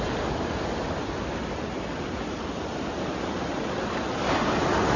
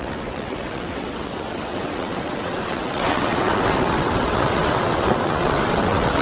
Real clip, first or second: first